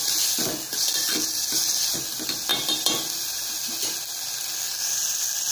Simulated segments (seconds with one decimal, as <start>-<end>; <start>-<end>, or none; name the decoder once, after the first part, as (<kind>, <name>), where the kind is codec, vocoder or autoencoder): none